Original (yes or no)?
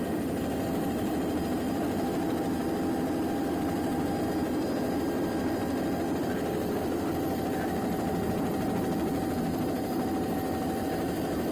no